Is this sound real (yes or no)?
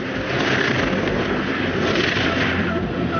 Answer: yes